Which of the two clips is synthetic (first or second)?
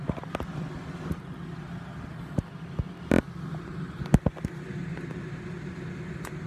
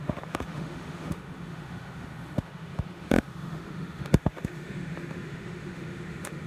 second